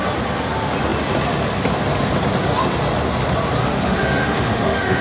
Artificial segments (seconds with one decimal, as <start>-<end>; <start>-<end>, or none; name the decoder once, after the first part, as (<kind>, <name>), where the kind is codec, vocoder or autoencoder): 3.6-5.0 (autoencoder, DAC-VAE)